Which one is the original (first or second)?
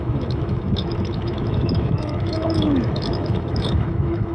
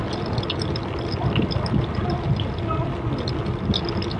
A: second